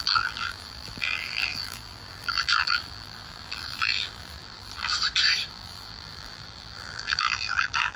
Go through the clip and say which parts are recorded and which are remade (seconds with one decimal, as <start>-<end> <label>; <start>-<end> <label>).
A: 0.0-4.9 remade; 4.9-5.5 recorded; 5.5-8.0 remade